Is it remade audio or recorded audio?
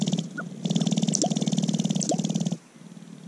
recorded